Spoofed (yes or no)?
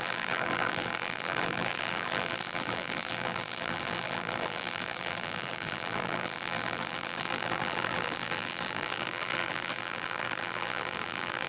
yes